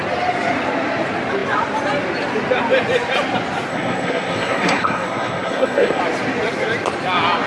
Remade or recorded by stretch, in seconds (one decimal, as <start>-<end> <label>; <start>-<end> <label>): 0.0-3.7 recorded; 3.7-6.0 remade; 6.0-7.5 recorded